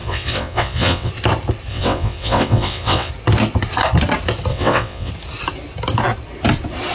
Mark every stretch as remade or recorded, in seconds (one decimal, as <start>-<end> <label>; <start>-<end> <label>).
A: 0.0-1.1 remade; 1.1-1.7 recorded; 1.7-3.1 remade; 3.1-4.5 recorded; 4.5-5.1 remade; 5.1-6.9 recorded